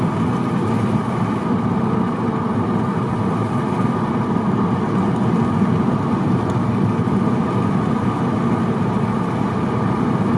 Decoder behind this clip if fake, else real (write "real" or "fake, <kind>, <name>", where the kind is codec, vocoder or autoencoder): real